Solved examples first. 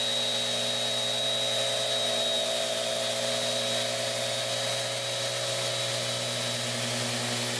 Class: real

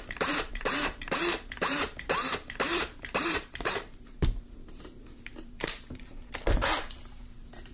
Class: fake